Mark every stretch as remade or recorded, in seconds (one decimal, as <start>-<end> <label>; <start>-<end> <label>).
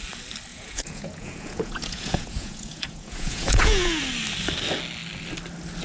0.0-0.5 recorded; 0.5-4.0 remade; 4.0-5.8 recorded